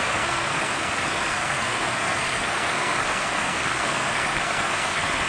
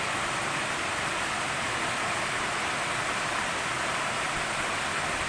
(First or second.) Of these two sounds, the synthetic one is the first